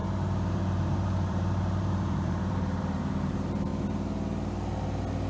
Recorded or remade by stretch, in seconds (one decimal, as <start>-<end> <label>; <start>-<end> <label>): 0.0-3.7 remade; 3.7-5.3 recorded